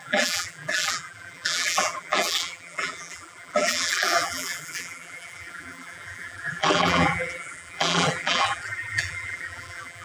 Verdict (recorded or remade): remade